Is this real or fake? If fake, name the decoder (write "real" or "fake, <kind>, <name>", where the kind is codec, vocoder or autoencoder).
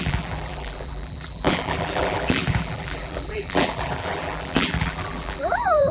fake, vocoder, BigVGAN v2